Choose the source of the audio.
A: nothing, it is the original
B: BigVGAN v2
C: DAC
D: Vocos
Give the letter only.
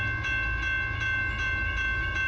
A